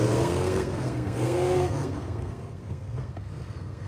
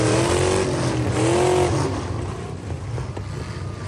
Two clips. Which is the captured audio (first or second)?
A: second